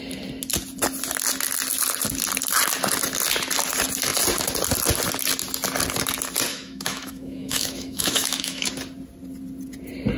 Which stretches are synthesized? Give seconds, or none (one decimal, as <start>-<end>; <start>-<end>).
6.5-8.7